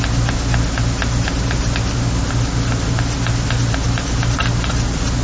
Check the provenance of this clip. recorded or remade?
recorded